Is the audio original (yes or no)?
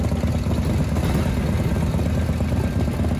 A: yes